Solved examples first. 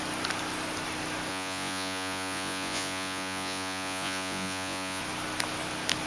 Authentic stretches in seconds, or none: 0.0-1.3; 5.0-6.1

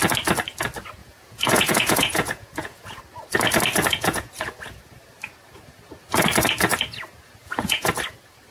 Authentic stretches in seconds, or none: 0.0-1.0; 3.0-3.9; 4.5-7.4; 7.9-8.5

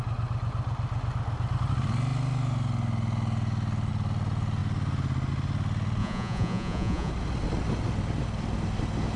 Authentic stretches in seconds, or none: 0.0-6.0; 7.1-9.2